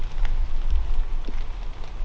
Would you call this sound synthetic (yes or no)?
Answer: no